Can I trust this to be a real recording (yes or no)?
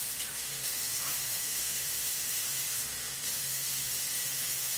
no